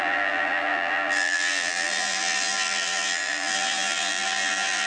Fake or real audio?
fake